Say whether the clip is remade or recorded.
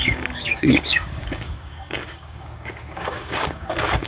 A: remade